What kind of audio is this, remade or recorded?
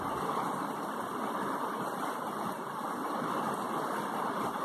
recorded